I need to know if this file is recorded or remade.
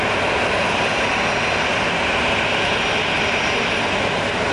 recorded